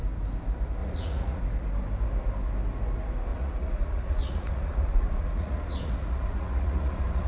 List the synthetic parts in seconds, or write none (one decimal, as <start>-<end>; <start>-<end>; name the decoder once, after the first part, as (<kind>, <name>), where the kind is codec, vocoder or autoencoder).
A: 0.8-1.4 (vocoder, Vocos); 3.3-7.3